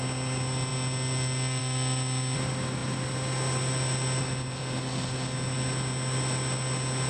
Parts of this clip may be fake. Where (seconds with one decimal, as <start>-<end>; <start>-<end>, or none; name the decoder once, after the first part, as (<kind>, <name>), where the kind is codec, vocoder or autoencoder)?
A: none